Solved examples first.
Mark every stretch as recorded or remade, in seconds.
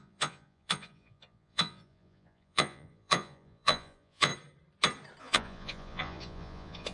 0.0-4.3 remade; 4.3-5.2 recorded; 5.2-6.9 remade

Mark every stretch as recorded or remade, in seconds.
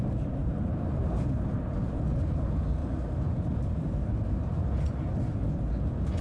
0.0-0.4 recorded; 0.4-2.0 remade; 2.0-2.8 recorded; 2.8-4.9 remade; 4.9-6.2 recorded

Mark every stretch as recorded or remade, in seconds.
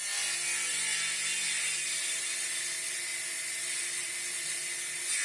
0.0-5.2 recorded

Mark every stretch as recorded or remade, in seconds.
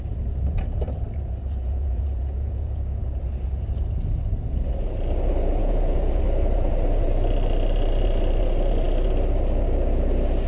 0.0-1.6 recorded; 1.6-3.0 remade; 3.0-5.6 recorded; 5.6-6.2 remade; 6.2-10.5 recorded